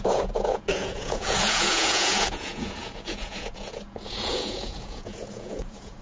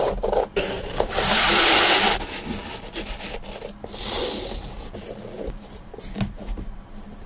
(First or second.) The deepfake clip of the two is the first